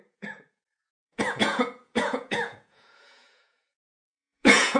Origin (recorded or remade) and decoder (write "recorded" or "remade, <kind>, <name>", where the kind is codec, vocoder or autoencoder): remade, vocoder, Vocos